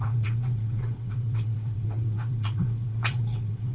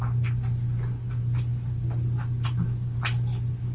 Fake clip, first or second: first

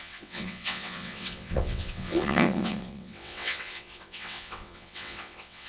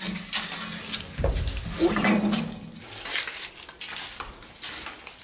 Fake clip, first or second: first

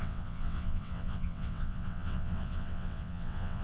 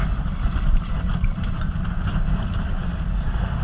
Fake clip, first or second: first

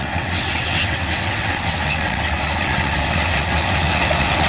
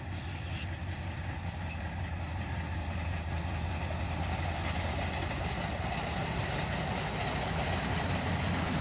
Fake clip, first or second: first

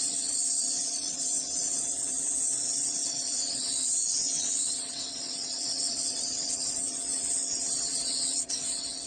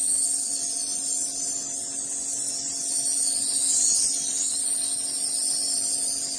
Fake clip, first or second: first